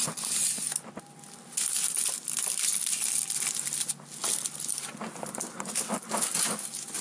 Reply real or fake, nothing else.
real